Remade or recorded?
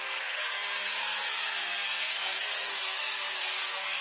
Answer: remade